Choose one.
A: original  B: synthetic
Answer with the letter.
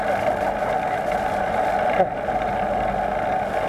A